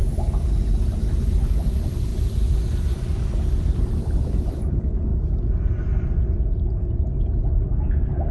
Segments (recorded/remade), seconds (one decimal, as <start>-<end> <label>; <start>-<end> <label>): 0.0-8.3 recorded

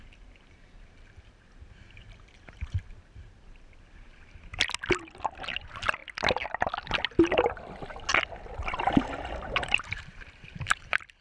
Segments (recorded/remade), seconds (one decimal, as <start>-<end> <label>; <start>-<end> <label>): 0.0-4.5 remade; 4.5-5.6 recorded; 5.6-6.0 remade; 6.0-9.3 recorded; 9.3-11.2 remade

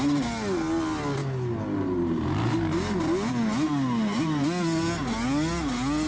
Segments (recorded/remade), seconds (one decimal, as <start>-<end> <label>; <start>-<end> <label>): 0.0-6.1 recorded

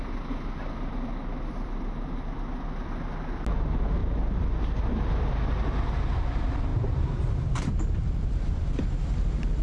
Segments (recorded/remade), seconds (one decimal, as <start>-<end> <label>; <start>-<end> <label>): 0.0-6.7 recorded; 6.7-7.7 remade; 7.7-9.6 recorded

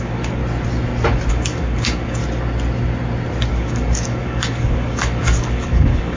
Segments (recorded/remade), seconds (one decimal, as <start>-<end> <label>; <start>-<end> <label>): 0.0-0.4 remade; 0.4-1.3 recorded; 1.3-2.2 remade; 2.2-3.5 recorded; 3.5-6.2 remade

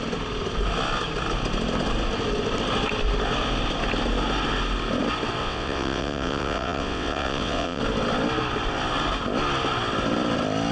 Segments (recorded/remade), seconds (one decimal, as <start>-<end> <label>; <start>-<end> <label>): 0.0-5.4 recorded; 5.4-7.8 remade; 7.8-10.7 recorded